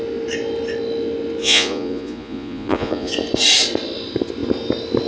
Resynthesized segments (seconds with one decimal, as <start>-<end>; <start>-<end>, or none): 1.4-3.1